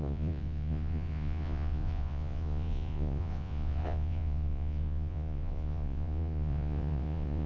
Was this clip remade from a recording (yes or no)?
yes